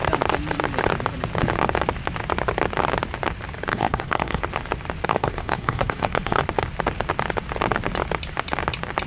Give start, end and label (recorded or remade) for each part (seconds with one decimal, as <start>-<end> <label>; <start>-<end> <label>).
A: 0.0-3.7 recorded; 3.7-4.4 remade; 4.4-5.1 recorded; 5.1-6.4 remade; 6.4-9.1 recorded